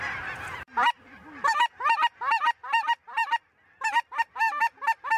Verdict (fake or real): fake